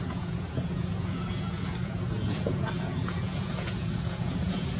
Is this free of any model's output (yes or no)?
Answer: no